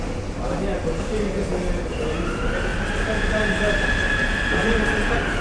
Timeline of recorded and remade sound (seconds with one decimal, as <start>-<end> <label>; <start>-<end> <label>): 0.0-5.4 recorded